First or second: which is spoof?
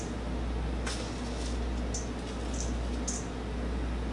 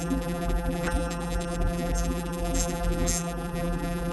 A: second